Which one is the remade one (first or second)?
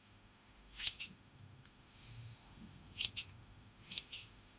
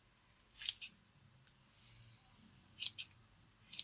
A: first